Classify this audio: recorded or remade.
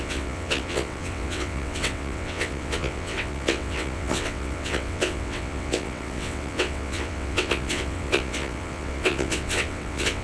remade